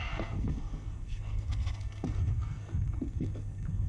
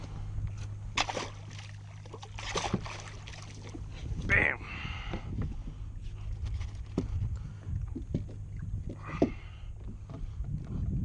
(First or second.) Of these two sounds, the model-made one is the first